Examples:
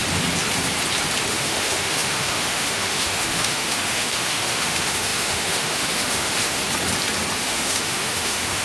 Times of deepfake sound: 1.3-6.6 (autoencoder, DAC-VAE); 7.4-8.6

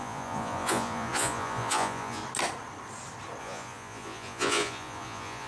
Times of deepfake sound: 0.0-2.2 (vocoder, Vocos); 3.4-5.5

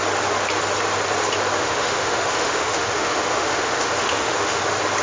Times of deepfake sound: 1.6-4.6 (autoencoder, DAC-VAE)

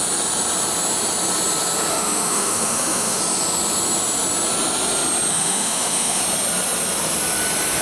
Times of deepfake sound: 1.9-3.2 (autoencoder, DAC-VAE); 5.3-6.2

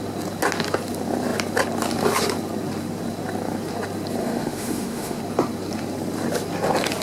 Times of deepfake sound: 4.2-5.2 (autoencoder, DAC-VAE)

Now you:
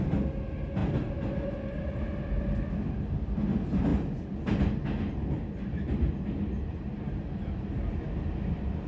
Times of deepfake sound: none

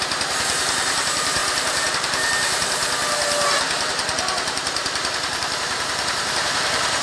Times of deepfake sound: 0.0-2.8 (vocoder, BigVGAN v2); 3.9-7.0